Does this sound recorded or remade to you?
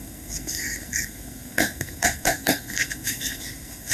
remade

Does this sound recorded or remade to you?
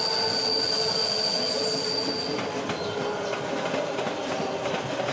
recorded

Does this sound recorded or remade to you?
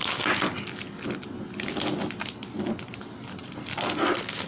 recorded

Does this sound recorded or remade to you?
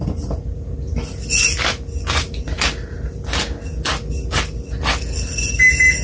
recorded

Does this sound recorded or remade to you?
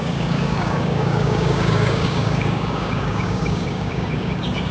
remade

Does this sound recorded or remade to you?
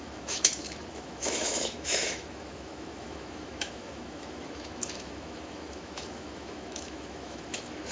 remade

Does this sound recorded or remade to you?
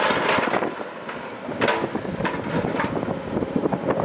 recorded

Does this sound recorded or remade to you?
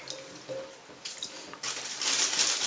recorded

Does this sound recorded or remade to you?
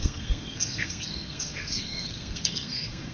remade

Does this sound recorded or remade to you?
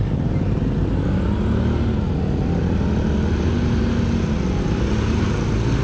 recorded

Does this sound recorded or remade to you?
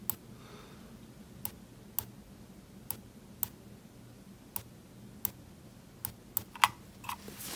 recorded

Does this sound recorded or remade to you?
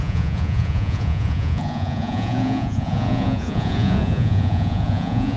remade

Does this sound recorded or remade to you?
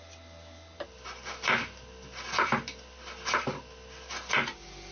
recorded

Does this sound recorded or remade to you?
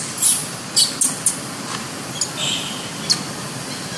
recorded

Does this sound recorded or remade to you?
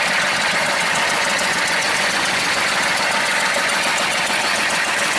remade